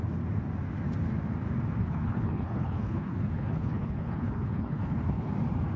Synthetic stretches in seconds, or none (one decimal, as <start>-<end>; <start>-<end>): 1.8-5.3